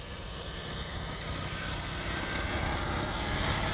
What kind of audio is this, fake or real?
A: real